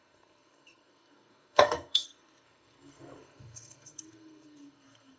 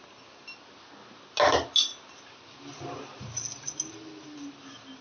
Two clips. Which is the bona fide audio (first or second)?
second